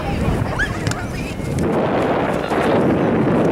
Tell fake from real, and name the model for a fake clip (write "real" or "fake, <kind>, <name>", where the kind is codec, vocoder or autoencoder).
real